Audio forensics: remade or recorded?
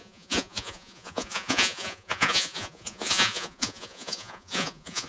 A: remade